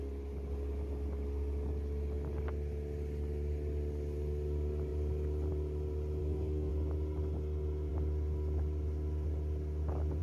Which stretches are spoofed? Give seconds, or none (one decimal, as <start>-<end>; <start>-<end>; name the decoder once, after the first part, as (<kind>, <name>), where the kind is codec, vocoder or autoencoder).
6.2-6.7 (codec, SNAC)